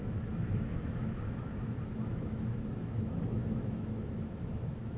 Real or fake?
fake